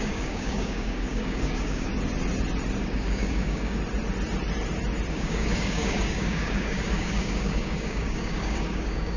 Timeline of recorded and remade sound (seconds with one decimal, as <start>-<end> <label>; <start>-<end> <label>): 0.0-1.9 remade; 1.9-2.8 recorded; 2.8-3.8 remade; 3.8-5.1 recorded; 5.1-9.2 remade